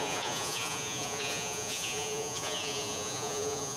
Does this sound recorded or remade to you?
remade